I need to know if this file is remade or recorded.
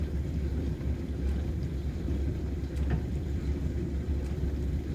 remade